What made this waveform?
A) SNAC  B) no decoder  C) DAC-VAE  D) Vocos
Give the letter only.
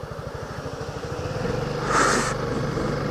B